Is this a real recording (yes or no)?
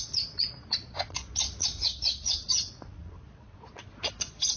no